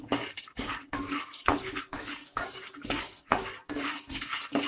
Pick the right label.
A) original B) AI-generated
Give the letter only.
B